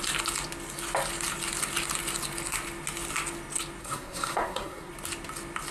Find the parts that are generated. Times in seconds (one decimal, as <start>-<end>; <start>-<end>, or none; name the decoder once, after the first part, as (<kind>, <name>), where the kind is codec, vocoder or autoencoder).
3.8-4.9 (codec, SNAC)